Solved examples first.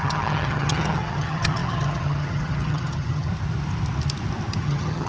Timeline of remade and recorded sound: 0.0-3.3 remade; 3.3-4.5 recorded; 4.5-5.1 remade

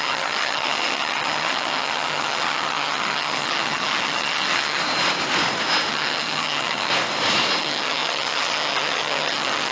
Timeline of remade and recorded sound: 0.0-4.8 remade; 4.8-5.9 recorded; 5.9-6.9 remade; 6.9-7.6 recorded; 7.6-9.7 remade

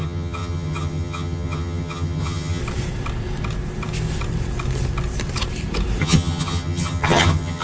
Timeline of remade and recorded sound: 0.0-2.6 remade; 2.6-6.0 recorded; 6.0-7.6 remade

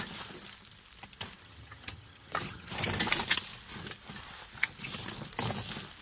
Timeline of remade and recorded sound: 0.0-1.4 recorded; 1.4-2.7 remade; 2.7-6.0 recorded

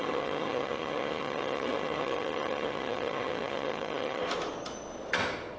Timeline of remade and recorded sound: 0.0-4.2 remade; 4.2-5.6 recorded

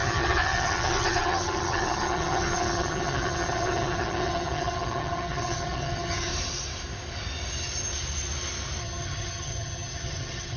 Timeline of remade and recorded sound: 0.0-6.3 remade; 6.3-8.8 recorded; 8.8-10.6 remade